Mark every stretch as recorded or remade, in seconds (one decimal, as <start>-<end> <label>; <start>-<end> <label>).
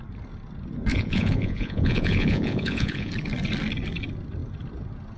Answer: 0.0-0.9 recorded; 0.9-3.1 remade; 3.1-5.2 recorded